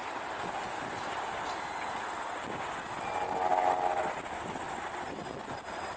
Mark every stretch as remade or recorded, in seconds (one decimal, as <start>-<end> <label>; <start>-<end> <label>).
0.0-6.0 recorded